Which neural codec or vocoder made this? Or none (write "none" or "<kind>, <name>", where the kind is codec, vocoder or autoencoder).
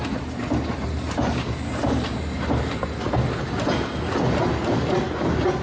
none